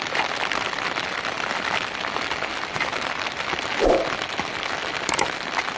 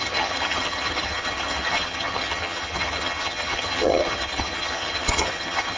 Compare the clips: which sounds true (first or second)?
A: first